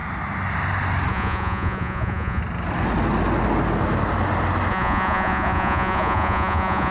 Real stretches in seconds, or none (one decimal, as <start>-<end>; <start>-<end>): 0.0-1.1; 2.4-4.7